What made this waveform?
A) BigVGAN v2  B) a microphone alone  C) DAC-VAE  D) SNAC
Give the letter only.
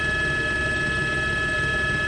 B